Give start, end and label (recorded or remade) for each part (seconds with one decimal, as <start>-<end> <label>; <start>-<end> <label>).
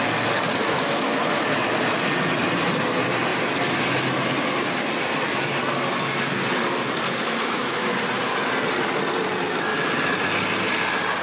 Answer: 0.0-0.6 recorded; 0.6-1.7 remade; 1.7-7.2 recorded; 7.2-7.9 remade; 7.9-11.2 recorded